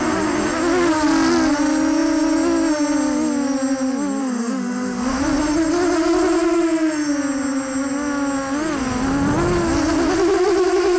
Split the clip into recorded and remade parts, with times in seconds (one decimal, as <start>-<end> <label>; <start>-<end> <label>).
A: 0.0-4.2 recorded; 4.2-5.2 remade; 5.2-11.0 recorded